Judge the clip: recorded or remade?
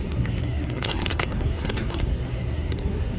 remade